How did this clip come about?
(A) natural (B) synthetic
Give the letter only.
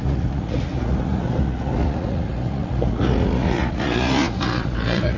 B